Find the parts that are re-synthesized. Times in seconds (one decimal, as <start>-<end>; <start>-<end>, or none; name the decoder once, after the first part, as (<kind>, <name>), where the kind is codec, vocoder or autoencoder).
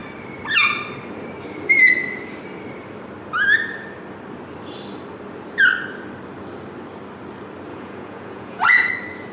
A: 7.7-8.9 (vocoder, Vocos)